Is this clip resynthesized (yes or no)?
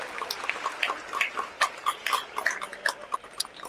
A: no